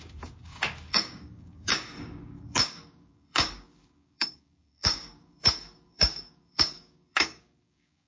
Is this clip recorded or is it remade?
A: remade